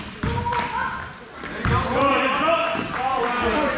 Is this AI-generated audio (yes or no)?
no